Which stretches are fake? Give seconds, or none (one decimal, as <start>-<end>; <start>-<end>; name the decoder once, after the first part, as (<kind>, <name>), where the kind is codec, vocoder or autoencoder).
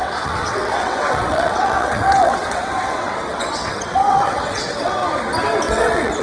0.0-5.0 (vocoder, WaveNeXt); 5.6-6.2